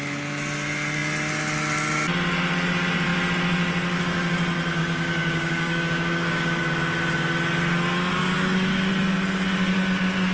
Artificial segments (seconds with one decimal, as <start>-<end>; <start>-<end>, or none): 4.8-6.6; 8.2-8.9